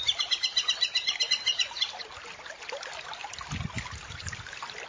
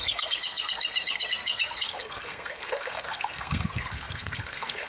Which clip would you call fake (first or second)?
second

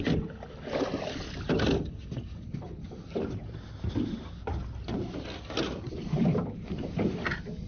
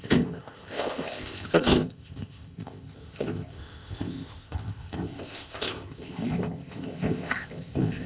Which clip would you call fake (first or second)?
second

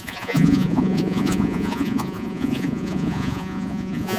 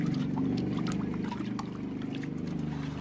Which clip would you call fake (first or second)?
first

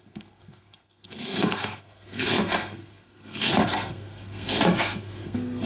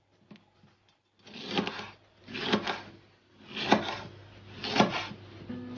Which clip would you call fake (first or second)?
first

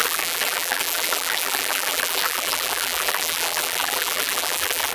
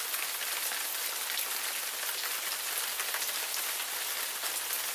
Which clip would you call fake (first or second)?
first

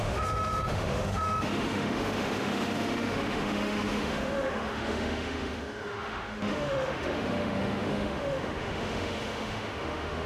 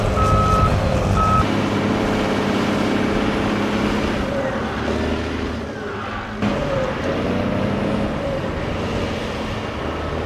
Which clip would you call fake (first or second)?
first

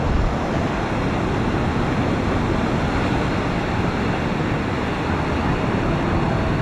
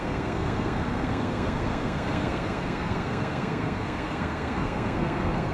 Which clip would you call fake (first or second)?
second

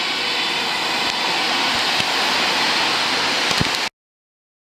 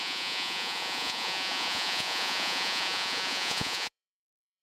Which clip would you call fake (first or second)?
second